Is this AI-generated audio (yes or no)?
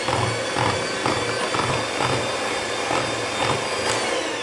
no